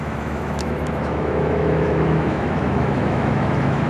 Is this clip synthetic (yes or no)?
yes